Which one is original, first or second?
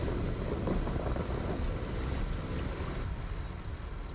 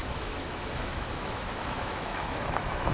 first